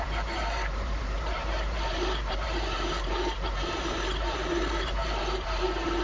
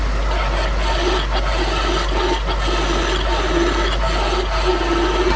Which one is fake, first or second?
first